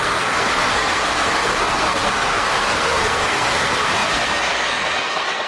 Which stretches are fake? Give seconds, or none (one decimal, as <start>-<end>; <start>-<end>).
0.0-5.5